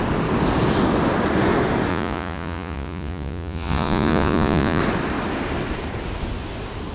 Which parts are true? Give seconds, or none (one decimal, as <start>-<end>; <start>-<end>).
0.0-1.9; 4.8-6.9

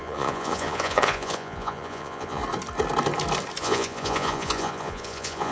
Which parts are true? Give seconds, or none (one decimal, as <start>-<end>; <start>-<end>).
2.4-3.6

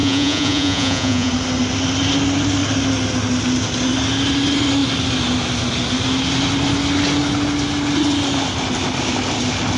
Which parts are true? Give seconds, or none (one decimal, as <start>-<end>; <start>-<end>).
1.3-9.8

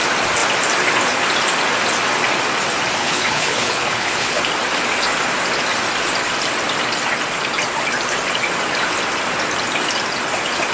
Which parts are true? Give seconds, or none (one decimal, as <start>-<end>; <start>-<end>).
0.0-3.0; 4.4-10.7

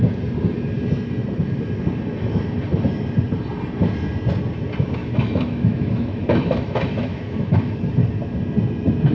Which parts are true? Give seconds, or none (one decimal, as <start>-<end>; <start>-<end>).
0.0-5.0; 7.8-9.1

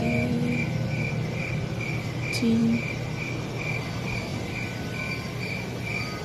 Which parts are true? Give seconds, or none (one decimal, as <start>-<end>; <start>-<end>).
0.0-6.2